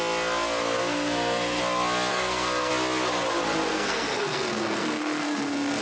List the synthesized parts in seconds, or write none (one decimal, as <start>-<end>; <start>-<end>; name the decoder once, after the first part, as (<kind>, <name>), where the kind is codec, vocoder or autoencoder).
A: 0.6-1.6 (codec, SNAC); 2.1-2.7; 3.7-5.8